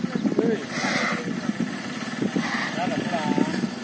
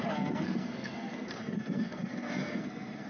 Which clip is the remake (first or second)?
second